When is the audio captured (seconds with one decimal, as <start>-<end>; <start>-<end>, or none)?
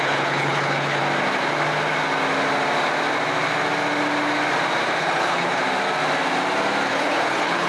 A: 1.0-5.0; 5.6-6.9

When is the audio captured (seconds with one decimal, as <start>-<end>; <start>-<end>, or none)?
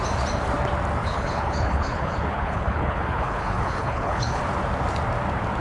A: 0.0-1.0; 4.4-5.6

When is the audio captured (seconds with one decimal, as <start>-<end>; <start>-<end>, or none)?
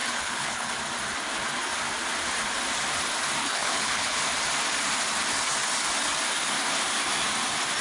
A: 0.7-3.4; 4.2-7.8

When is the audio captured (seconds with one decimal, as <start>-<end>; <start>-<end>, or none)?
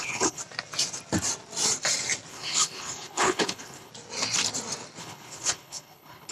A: 0.4-2.3; 3.9-5.0